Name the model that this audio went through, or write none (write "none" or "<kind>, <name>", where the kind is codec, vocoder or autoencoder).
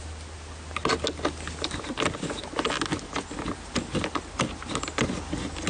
none